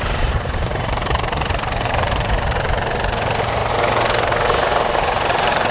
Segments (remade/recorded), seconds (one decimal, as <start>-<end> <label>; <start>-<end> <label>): 0.0-3.6 remade; 3.6-5.0 recorded; 5.0-5.7 remade